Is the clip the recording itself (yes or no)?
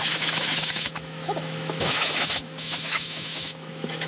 no